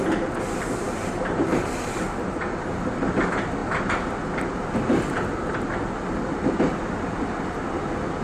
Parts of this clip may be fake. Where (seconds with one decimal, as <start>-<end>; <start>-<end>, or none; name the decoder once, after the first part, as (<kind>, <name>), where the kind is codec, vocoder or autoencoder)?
1.0-2.9 (vocoder, BigVGAN v2)